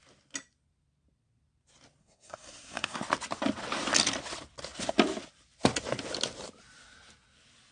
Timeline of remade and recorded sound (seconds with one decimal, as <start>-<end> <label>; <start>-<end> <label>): 0.0-2.0 recorded; 2.0-3.0 remade; 3.0-7.7 recorded